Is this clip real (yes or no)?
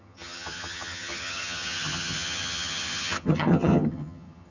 no